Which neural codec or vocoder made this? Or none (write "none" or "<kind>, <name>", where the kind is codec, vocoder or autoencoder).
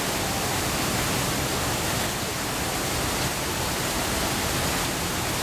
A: none